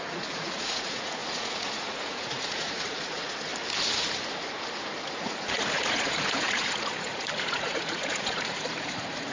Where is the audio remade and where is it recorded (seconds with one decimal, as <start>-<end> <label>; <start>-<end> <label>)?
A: 0.0-3.5 remade; 3.5-5.2 recorded; 5.2-9.3 remade

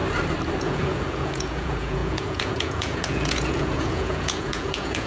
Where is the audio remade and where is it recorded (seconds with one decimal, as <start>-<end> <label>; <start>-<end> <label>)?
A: 0.0-0.6 recorded; 0.6-5.1 remade

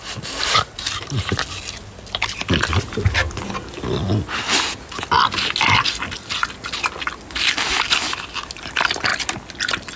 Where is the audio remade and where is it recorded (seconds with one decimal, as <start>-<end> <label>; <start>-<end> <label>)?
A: 0.0-10.0 recorded

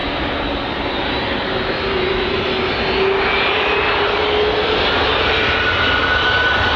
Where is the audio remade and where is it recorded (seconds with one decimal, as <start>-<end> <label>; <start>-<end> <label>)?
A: 0.0-6.8 recorded

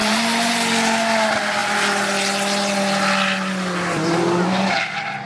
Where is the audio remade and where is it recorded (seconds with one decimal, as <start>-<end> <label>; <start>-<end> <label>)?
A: 0.0-0.5 remade; 0.5-5.3 recorded

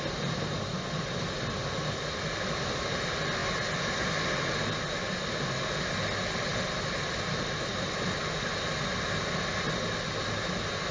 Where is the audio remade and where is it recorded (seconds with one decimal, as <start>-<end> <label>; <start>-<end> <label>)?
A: 0.0-10.9 recorded